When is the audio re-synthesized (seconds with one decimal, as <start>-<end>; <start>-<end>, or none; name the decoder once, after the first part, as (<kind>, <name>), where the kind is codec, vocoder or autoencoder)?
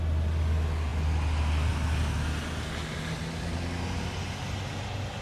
none